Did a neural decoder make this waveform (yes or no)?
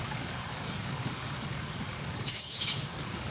yes